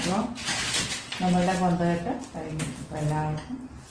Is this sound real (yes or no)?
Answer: yes